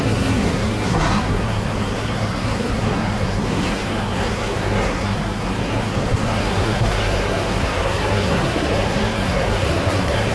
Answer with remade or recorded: remade